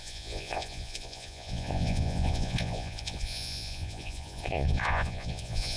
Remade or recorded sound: remade